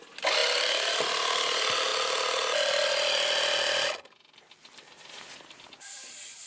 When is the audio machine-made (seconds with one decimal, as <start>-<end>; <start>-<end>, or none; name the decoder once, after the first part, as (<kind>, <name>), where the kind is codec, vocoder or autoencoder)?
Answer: none